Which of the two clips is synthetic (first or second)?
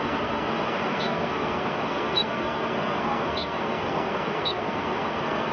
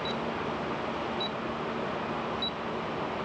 first